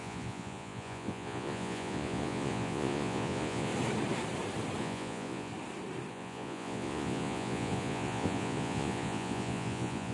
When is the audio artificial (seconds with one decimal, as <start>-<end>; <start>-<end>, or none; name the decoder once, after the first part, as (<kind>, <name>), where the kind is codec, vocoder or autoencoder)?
0.0-3.7 (vocoder, Vocos); 4.8-5.5; 6.1-10.1